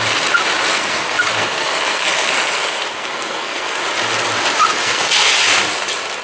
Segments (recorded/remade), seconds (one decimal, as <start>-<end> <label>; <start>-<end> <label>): 0.0-0.7 recorded; 0.7-3.8 remade; 3.8-4.8 recorded; 4.8-5.4 remade; 5.4-6.2 recorded